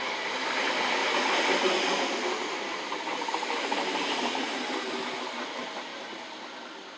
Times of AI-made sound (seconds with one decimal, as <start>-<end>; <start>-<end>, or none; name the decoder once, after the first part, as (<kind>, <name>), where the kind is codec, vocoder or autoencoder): none